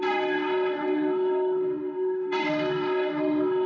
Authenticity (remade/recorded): remade